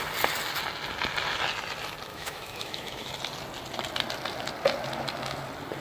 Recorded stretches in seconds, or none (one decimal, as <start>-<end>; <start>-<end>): 0.0-2.1; 3.1-5.8